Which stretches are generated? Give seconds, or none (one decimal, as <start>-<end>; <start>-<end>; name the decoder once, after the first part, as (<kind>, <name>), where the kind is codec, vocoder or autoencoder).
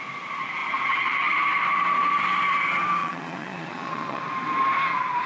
3.0-4.2 (vocoder, Vocos)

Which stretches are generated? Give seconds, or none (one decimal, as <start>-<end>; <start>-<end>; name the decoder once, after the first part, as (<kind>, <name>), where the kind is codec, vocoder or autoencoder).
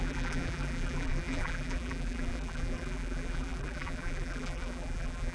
0.0-5.3 (vocoder, BigVGAN v2)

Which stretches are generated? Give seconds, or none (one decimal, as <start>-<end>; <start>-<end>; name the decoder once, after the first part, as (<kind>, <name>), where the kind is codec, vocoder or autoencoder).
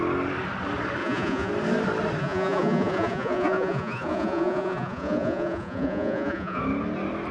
1.0-1.5 (vocoder, Vocos); 2.2-6.6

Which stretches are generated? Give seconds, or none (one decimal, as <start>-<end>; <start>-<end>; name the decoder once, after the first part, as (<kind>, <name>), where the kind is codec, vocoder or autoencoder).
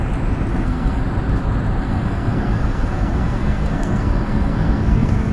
0.5-1.0 (codec, SNAC); 1.8-5.3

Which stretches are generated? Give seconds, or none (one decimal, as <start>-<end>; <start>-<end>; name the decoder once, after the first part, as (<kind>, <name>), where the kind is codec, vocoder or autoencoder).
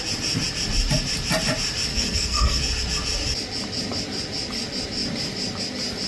1.9-2.6 (codec, SNAC)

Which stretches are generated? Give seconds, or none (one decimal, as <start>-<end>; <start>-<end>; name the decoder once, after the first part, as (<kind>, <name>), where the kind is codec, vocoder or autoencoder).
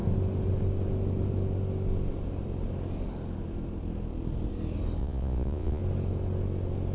5.0-5.8 (vocoder, Vocos)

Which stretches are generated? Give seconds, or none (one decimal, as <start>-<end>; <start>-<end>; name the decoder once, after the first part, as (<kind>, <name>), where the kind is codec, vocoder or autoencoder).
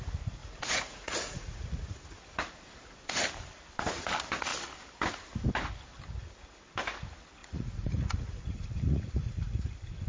0.4-2.0 (vocoder, Vocos); 7.4-9.7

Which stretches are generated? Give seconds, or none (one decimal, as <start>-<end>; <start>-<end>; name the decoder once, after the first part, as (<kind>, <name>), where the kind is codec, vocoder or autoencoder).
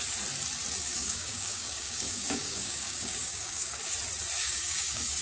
0.8-3.9 (codec, DAC); 4.4-5.2